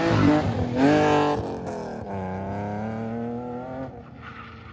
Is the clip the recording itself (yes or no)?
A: yes